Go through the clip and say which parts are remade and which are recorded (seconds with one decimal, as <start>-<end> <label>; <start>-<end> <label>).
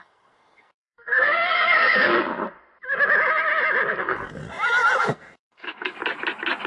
0.0-2.1 remade; 2.1-4.0 recorded; 4.0-4.4 remade; 4.4-5.0 recorded; 5.0-6.0 remade; 6.0-6.7 recorded